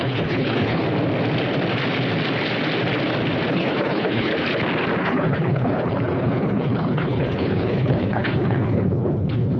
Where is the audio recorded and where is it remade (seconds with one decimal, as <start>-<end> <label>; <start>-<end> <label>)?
0.0-0.8 remade; 0.8-3.5 recorded; 3.5-4.3 remade; 4.3-5.0 recorded; 5.0-9.6 remade

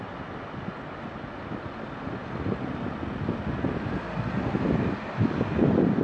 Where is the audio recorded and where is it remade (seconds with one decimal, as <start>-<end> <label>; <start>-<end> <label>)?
0.0-6.0 recorded